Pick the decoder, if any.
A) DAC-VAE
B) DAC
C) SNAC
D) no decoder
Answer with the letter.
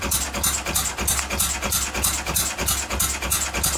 D